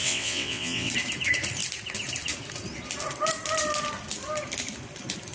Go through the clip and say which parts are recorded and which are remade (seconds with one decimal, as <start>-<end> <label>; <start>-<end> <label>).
0.0-0.9 remade; 0.9-5.3 recorded